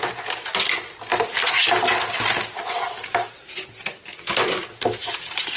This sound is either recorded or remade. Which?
recorded